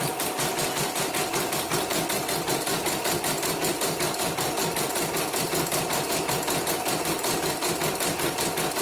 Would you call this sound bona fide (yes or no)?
yes